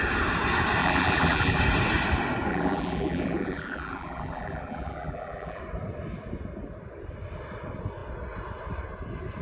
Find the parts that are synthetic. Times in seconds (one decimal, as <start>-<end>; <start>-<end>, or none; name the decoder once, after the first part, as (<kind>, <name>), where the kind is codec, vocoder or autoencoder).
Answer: 0.8-1.6 (vocoder, BigVGAN v2); 2.5-5.6